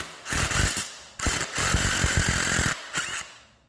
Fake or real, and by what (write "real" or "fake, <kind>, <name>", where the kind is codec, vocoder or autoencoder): real